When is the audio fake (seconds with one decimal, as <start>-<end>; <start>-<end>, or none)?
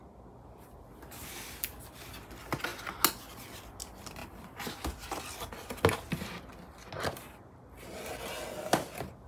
none